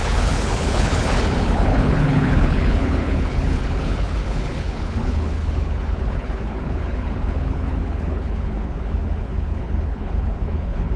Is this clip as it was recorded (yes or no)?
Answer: no